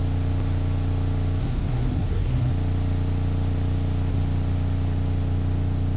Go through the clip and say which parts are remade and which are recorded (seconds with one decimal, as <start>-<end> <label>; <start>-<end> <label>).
0.0-1.4 recorded; 1.4-2.5 remade; 2.5-6.0 recorded